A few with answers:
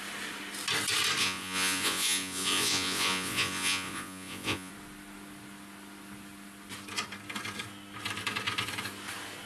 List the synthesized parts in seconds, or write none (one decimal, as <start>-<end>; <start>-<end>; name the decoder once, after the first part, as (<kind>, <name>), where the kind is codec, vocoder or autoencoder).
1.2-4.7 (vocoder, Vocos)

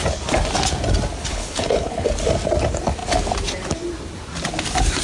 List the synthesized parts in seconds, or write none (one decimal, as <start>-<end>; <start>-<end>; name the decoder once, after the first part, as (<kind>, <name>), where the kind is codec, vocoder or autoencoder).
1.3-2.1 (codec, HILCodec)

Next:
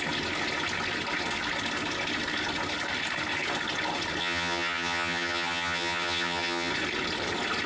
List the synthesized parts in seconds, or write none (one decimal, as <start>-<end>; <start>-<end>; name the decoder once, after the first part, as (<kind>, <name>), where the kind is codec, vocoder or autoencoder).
4.2-6.7 (vocoder, HiFi-GAN)

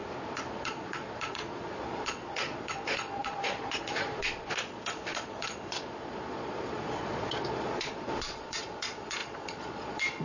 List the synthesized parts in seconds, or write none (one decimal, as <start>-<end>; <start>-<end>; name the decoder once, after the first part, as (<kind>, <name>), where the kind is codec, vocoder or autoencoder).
0.5-10.2 (vocoder, Vocos)